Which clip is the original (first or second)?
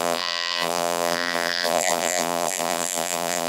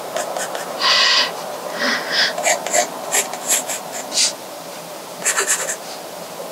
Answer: second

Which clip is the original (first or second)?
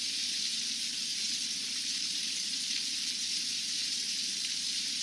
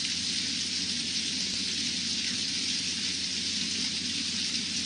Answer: second